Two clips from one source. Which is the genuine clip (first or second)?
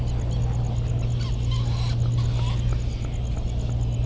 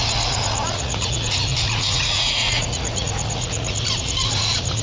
first